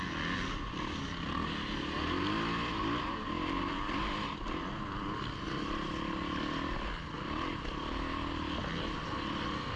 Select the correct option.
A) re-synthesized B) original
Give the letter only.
B